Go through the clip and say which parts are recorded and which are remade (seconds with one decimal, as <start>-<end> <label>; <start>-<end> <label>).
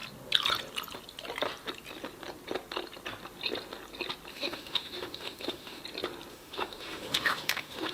0.0-4.3 recorded; 4.3-5.8 remade; 5.8-6.3 recorded; 6.3-7.9 remade